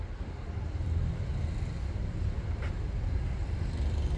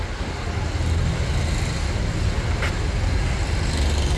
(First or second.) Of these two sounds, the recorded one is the second